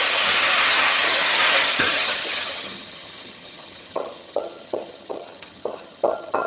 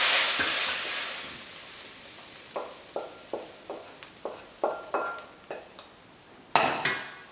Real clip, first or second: second